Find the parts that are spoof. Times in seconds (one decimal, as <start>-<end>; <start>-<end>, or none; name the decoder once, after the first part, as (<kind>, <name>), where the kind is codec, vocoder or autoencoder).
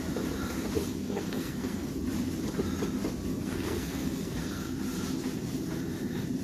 0.8-1.9 (codec, SNAC); 3.3-4.8